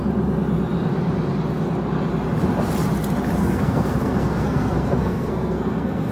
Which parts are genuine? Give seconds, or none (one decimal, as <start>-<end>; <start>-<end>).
0.0-3.4

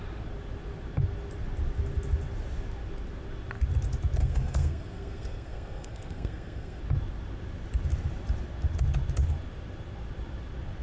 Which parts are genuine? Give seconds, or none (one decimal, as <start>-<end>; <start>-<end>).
0.0-4.2; 6.8-10.8

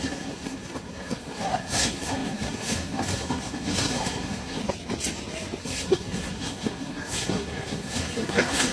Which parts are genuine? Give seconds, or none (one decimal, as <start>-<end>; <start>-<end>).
4.6-5.6

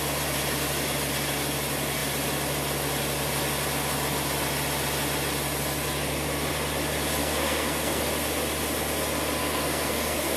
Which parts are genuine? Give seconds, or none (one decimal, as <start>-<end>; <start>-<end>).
0.0-7.2; 8.0-9.4

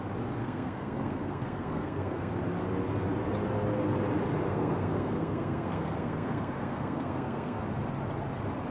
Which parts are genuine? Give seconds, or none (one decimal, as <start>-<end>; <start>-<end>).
0.0-0.4; 2.3-4.5; 7.6-8.7

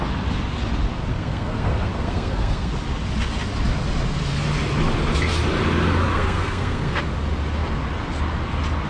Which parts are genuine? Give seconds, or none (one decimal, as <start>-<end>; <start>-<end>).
0.0-1.1; 2.7-6.1; 7.0-8.9

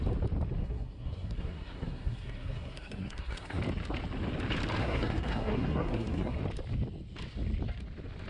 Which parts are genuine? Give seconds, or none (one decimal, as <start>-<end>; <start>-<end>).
0.0-0.6; 3.6-4.8; 6.4-8.3

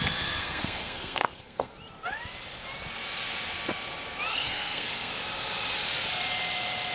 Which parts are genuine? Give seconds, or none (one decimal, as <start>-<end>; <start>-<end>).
0.0-0.4; 1.7-4.3; 5.1-6.9